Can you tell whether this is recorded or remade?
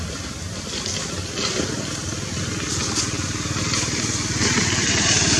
recorded